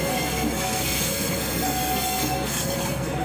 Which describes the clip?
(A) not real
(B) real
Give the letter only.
A